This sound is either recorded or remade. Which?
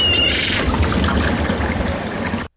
recorded